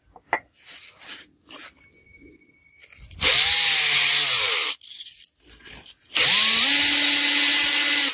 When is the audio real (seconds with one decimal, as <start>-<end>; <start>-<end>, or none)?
0.0-8.1